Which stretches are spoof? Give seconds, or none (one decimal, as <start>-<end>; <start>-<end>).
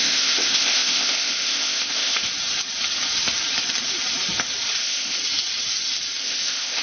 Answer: 0.0-2.3; 4.8-5.2; 6.2-6.8